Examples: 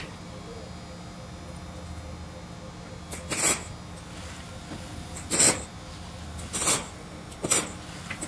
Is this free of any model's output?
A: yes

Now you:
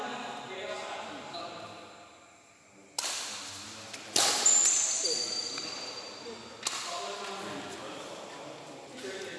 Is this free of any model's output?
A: yes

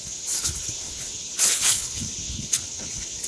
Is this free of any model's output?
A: no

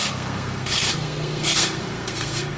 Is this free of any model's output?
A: no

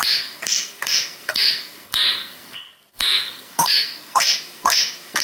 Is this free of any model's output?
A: no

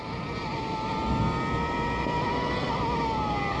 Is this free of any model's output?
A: yes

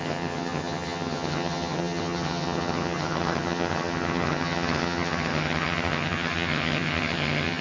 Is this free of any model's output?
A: no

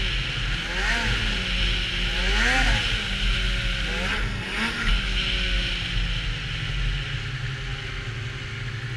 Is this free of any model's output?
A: yes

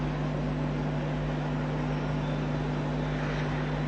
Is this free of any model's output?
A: yes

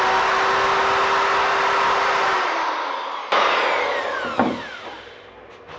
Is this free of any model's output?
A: yes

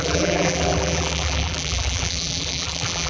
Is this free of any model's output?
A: no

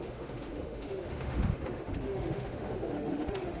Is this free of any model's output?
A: no